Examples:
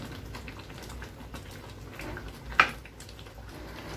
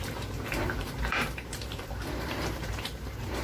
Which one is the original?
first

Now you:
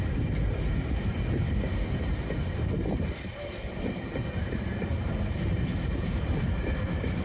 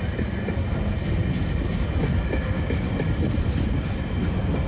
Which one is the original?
second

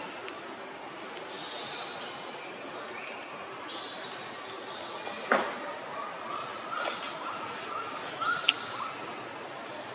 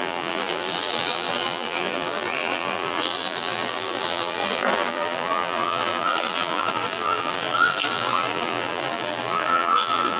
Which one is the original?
first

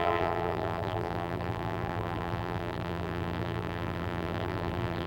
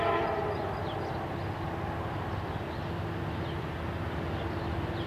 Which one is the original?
second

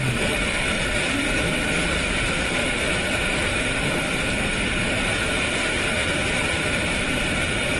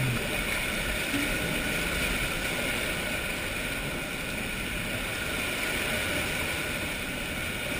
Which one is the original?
second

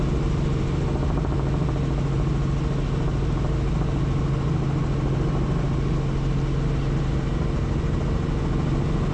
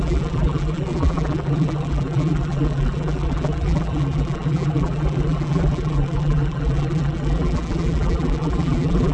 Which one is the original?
first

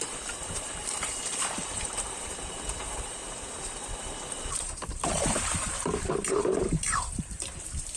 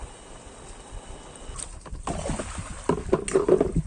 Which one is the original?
second